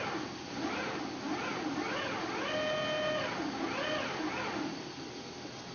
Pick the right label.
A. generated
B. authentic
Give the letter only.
B